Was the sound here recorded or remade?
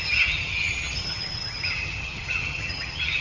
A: remade